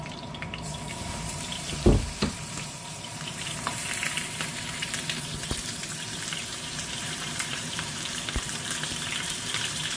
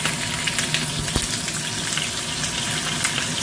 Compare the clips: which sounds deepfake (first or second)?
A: first